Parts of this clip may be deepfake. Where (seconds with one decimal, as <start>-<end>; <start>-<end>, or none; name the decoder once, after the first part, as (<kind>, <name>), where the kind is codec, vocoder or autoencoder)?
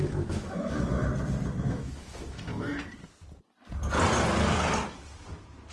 0.0-1.1 (autoencoder, DAC-VAE); 1.6-2.5